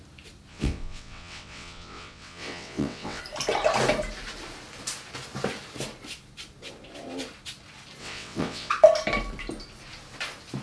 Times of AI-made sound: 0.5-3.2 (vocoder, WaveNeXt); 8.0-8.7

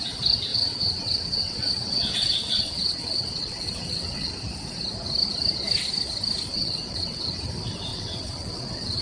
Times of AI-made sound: 0.5-4.3 (vocoder, WaveNeXt); 6.5-7.4; 7.9-9.0